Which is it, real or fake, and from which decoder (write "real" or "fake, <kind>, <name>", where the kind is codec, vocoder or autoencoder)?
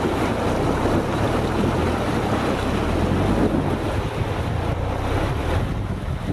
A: real